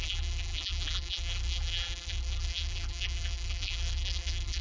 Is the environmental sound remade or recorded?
remade